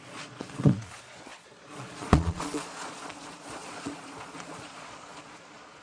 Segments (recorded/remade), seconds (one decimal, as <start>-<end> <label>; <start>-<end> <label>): 0.0-5.8 remade